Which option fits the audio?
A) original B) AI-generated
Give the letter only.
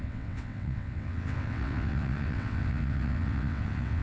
B